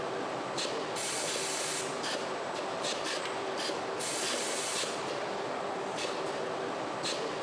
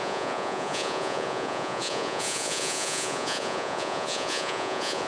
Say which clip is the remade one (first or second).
second